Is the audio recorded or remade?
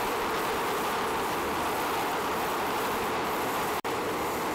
remade